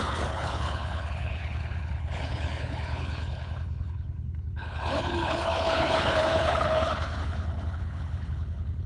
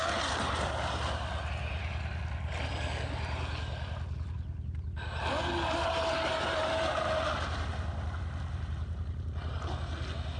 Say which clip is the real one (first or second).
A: second